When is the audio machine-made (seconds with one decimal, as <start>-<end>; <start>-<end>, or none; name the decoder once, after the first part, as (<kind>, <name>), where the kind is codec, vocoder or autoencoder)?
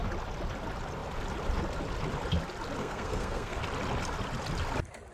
2.8-3.6 (codec, SNAC)